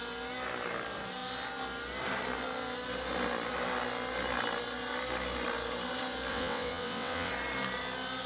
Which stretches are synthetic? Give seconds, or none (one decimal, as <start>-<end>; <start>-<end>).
6.3-7.3